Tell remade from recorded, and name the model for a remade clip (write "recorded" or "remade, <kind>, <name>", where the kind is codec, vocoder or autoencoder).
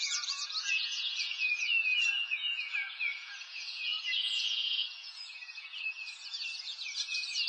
remade, vocoder, Vocos